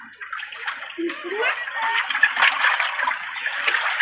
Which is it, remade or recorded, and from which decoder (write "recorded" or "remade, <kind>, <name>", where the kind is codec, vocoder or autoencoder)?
recorded